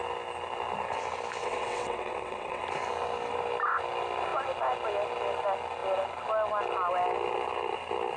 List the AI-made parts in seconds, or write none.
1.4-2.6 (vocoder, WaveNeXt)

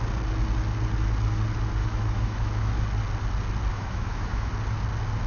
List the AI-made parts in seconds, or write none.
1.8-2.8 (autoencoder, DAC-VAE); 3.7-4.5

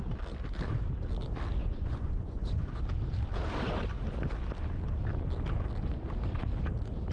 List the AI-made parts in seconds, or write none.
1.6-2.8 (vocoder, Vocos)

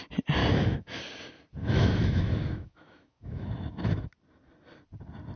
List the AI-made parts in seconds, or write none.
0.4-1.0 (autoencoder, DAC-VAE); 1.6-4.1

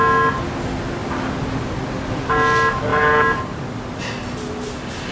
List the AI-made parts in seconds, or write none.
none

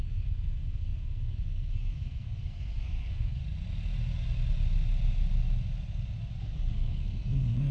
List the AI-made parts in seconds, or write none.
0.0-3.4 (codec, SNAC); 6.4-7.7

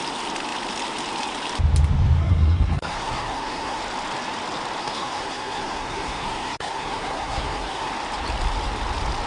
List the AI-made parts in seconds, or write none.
2.2-3.8 (codec, SNAC); 4.8-7.9

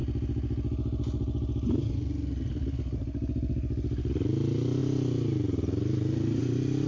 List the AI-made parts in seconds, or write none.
none